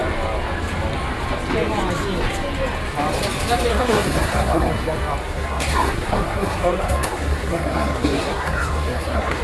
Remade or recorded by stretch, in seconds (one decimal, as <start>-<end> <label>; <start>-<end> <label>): 0.0-3.7 recorded; 3.7-4.7 remade; 4.7-5.2 recorded; 5.2-9.4 remade